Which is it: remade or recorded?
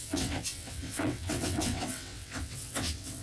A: remade